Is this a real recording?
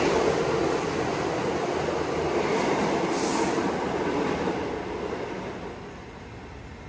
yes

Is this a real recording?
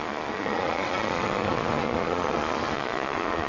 no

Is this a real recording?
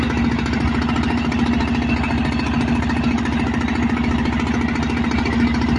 yes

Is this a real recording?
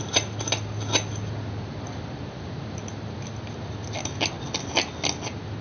yes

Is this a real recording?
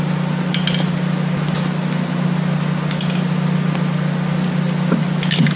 yes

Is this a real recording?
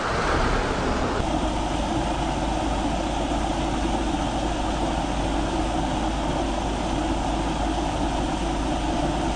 yes